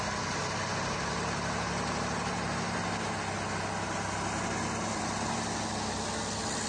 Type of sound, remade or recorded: recorded